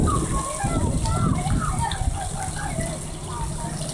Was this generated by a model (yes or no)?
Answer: no